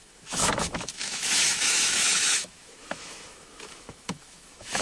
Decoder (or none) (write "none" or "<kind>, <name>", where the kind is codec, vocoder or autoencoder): autoencoder, DAC-VAE